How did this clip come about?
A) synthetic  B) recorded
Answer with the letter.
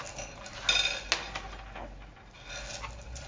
B